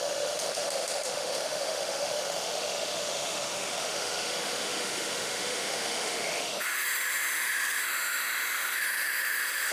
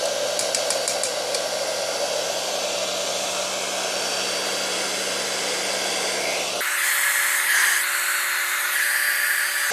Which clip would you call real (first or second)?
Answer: second